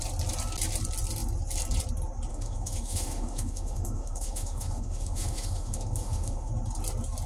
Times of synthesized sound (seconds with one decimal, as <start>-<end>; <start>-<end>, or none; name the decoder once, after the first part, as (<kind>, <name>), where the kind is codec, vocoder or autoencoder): 2.3-6.5 (autoencoder, DAC-VAE)